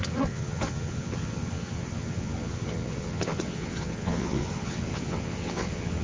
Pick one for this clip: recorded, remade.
remade